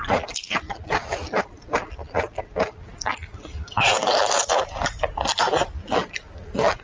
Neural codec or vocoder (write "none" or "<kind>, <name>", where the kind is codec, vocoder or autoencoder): none